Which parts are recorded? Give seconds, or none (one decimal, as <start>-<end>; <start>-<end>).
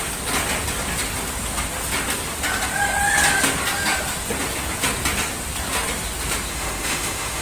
0.0-6.5